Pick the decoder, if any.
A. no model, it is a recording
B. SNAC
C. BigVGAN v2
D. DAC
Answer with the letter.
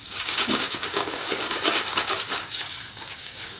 D